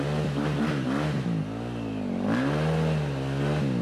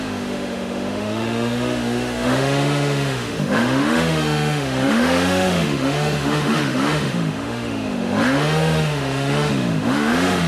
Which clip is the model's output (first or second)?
second